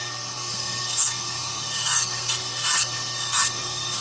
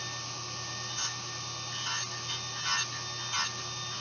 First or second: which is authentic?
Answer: second